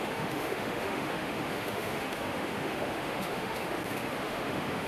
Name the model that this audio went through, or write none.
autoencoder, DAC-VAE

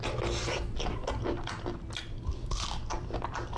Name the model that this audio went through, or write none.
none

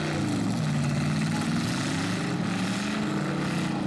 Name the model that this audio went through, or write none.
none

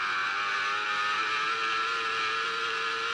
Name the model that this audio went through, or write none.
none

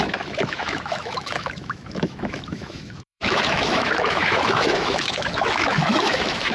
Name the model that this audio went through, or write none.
autoencoder, DAC-VAE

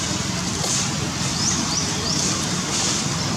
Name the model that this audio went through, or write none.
none